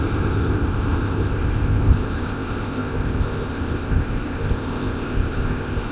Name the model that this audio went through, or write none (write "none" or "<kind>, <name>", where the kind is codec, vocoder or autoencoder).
codec, ZipCodec